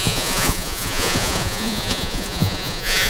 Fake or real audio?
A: fake